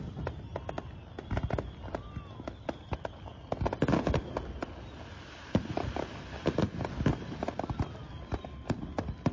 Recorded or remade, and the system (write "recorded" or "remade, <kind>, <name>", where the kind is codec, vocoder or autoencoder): recorded